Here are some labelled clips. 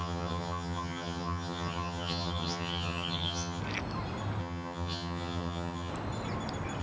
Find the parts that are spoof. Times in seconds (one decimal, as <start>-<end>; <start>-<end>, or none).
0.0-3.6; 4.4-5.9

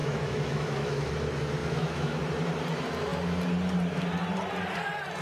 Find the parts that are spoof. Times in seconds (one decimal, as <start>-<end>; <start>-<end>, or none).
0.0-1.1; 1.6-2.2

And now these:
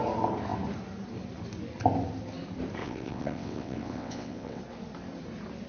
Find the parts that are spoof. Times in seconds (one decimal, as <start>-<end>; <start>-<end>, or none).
2.8-4.6

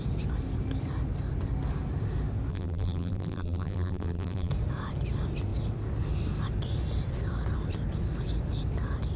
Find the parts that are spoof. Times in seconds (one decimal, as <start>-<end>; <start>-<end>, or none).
2.5-4.5

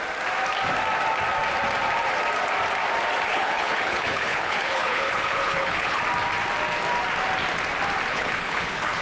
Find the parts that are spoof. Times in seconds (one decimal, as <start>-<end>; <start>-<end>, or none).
3.3-6.0; 8.1-9.0